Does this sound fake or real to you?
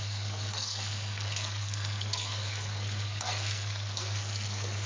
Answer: fake